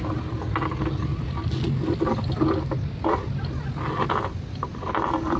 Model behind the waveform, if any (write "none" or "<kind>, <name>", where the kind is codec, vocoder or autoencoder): none